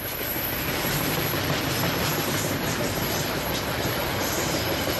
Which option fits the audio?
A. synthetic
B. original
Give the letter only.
A